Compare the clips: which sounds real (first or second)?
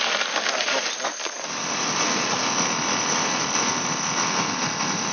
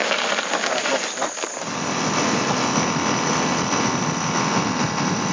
second